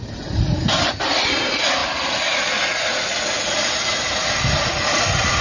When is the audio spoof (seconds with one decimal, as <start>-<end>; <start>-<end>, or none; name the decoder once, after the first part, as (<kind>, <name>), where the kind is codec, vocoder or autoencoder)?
none